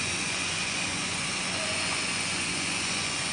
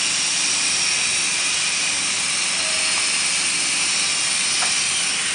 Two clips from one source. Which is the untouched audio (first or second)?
second